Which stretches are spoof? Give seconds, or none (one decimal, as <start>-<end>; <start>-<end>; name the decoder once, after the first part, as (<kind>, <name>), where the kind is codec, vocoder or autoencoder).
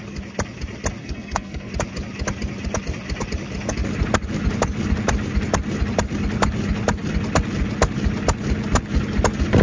1.0-1.7 (codec, SNAC)